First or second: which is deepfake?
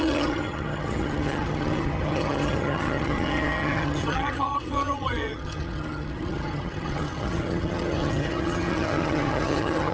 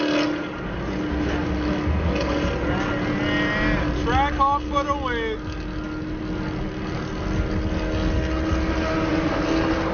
first